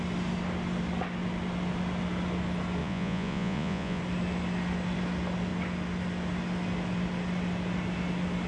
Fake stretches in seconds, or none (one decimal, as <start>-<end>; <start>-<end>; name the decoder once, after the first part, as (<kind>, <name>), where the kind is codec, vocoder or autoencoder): 2.8-4.0 (vocoder, Vocos)